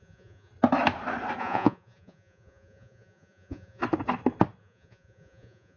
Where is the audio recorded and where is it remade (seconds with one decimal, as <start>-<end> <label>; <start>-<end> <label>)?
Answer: 0.0-0.5 remade; 0.5-1.4 recorded; 1.4-3.8 remade; 3.8-4.6 recorded; 4.6-5.8 remade